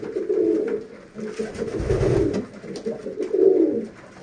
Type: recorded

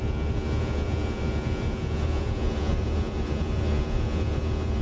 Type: remade